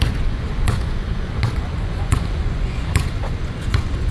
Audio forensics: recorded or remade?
remade